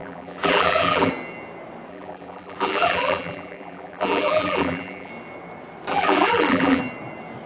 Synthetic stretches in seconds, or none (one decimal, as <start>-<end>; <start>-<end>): 0.0-1.1; 1.9-5.1; 5.9-6.8